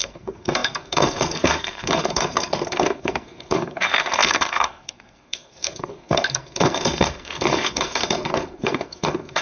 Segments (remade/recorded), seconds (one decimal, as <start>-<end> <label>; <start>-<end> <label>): 0.0-9.4 remade